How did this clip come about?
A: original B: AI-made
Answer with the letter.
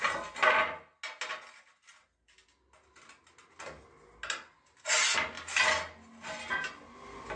A